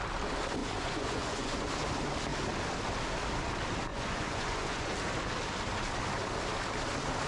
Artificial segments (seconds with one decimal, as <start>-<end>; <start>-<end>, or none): 0.6-1.7; 3.9-4.9